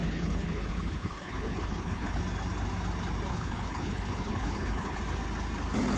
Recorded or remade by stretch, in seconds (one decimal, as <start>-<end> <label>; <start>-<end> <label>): 0.0-2.2 remade; 2.2-3.3 recorded; 3.3-5.0 remade; 5.0-6.0 recorded